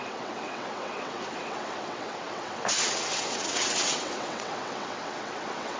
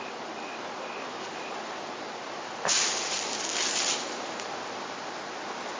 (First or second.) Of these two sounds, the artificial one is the first